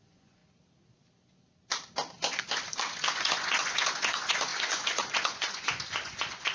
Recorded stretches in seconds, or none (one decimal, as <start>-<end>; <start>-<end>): 0.4-3.1